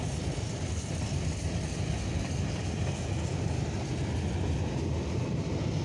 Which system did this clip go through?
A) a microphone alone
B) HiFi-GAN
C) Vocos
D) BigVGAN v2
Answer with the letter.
D